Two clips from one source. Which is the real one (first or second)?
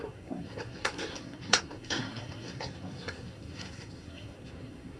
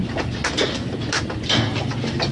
second